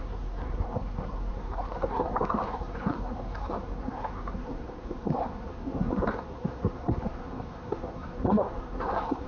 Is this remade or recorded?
remade